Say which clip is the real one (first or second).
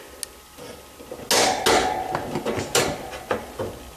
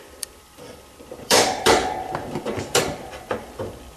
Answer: first